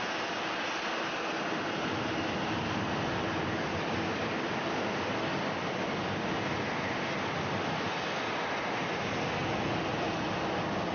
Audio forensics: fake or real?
real